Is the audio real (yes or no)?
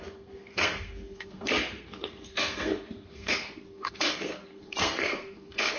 no